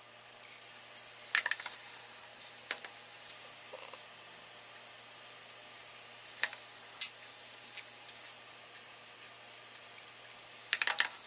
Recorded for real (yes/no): yes